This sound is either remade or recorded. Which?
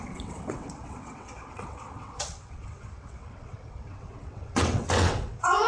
remade